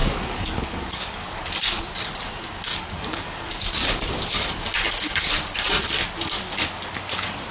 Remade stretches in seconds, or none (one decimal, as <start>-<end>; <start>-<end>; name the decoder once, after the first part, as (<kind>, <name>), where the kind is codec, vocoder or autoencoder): 0.0-1.8 (codec, DAC); 2.7-4.2